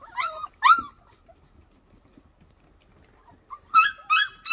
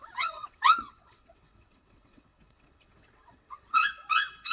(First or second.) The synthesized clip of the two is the second